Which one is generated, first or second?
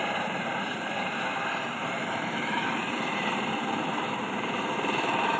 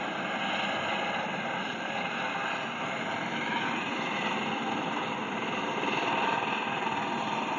first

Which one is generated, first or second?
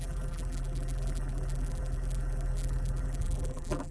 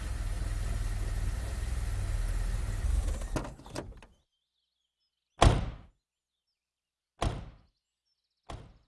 first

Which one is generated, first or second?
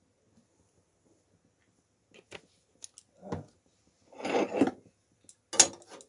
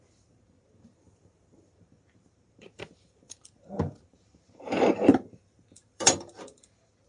second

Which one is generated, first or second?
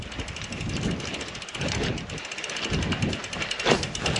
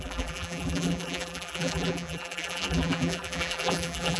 second